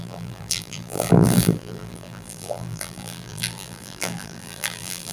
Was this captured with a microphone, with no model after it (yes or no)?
no